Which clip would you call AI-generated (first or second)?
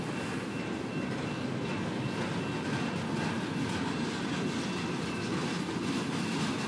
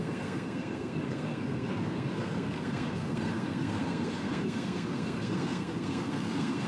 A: second